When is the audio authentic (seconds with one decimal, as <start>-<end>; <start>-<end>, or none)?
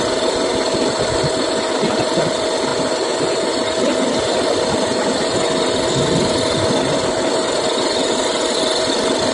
0.0-9.3